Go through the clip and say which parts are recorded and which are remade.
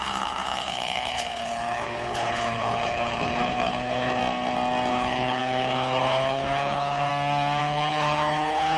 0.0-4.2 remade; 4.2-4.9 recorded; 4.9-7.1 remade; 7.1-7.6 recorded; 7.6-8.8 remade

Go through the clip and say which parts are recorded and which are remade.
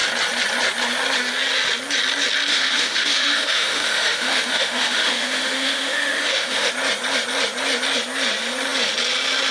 0.0-2.5 recorded; 2.5-6.7 remade; 6.7-9.5 recorded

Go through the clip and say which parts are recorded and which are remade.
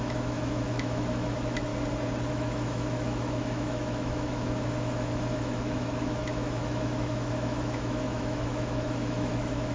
0.0-1.7 remade; 1.7-2.3 recorded; 2.3-9.7 remade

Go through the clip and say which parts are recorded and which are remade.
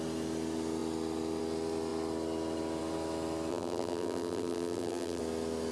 0.0-3.5 recorded; 3.5-5.2 remade; 5.2-5.7 recorded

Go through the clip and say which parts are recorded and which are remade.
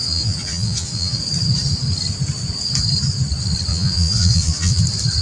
0.0-1.2 remade; 1.2-3.7 recorded; 3.7-4.8 remade; 4.8-5.2 recorded